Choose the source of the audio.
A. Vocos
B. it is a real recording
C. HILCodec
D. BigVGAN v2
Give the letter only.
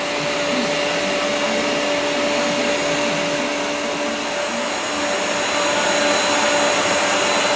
B